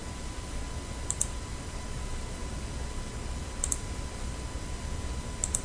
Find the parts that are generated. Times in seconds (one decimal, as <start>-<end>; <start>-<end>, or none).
none